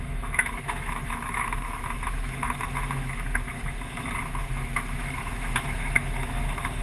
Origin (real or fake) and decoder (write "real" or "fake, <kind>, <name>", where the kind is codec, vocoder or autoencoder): fake, autoencoder, DAC-VAE